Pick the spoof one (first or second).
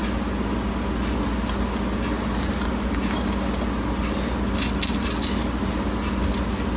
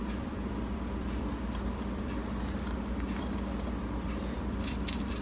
second